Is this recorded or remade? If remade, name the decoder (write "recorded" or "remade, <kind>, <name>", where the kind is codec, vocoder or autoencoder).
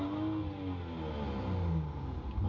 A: recorded